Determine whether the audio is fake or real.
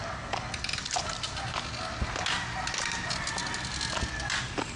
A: real